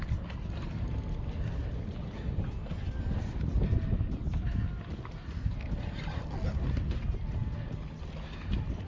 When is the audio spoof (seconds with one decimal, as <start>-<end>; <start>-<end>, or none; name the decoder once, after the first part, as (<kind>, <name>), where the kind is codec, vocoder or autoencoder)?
none